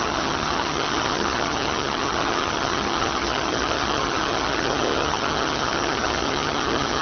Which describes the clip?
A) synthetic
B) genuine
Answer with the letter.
A